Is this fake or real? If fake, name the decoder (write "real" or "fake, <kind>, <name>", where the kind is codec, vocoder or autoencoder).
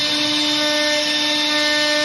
real